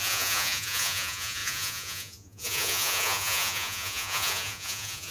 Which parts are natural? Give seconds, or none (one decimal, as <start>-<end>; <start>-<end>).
none